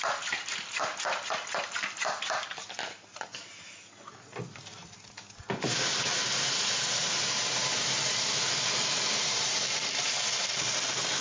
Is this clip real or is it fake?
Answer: real